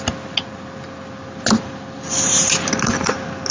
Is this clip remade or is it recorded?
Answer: recorded